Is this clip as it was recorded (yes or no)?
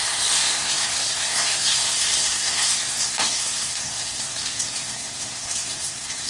no